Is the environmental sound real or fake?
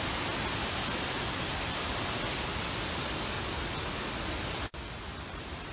real